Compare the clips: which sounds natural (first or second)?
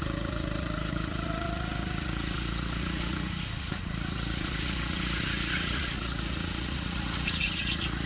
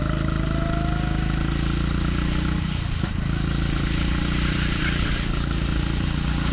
second